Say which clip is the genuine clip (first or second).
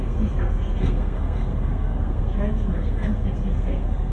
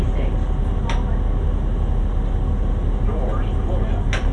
second